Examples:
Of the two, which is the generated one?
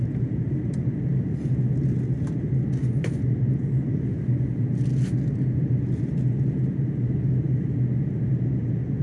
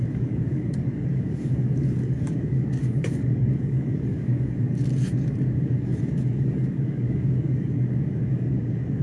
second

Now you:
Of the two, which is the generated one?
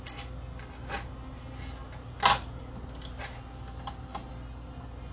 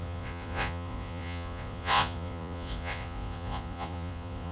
second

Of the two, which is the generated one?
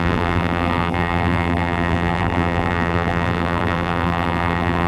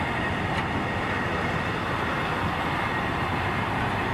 first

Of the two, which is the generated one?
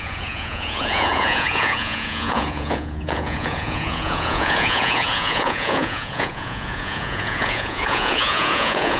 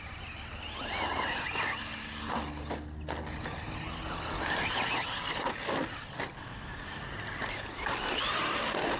first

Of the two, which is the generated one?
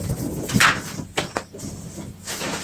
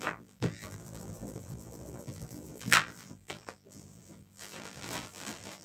second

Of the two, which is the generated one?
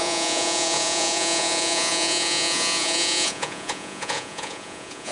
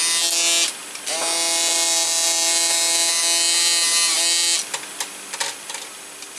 first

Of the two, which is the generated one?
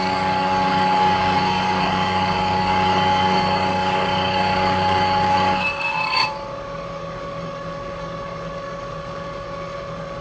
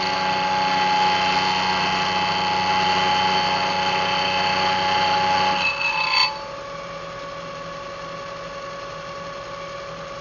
first